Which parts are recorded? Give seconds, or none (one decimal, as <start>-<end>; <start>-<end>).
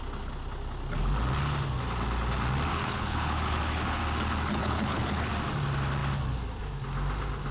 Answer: 0.0-2.7; 4.0-4.6; 5.3-7.5